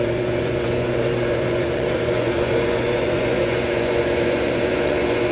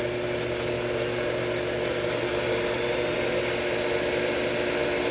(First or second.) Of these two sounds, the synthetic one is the first